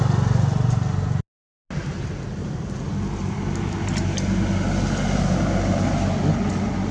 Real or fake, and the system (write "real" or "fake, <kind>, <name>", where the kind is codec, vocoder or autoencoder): real